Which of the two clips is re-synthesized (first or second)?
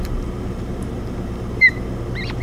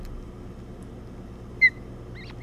first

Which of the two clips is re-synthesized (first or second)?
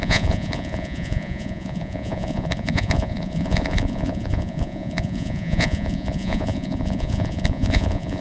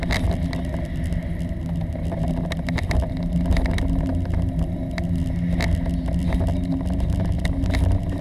first